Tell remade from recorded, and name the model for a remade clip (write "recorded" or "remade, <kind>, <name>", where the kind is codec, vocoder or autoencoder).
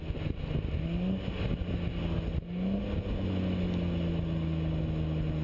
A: recorded